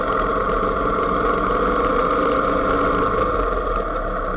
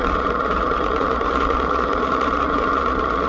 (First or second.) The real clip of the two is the first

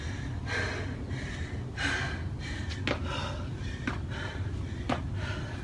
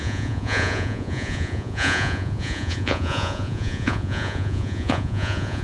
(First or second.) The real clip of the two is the first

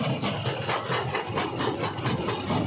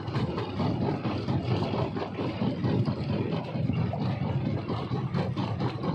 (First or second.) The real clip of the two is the first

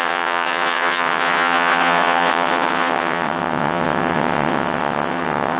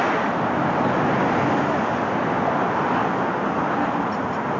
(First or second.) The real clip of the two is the second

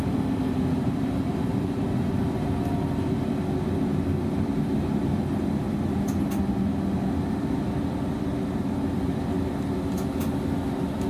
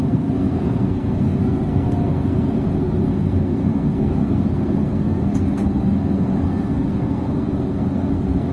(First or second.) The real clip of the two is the first